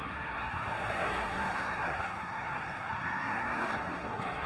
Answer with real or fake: fake